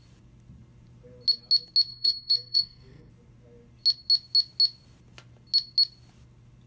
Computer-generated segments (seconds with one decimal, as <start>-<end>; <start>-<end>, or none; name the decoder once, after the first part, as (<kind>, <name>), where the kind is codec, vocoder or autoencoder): 1.9-3.1 (codec, SNAC)